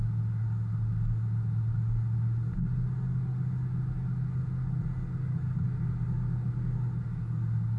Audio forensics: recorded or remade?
recorded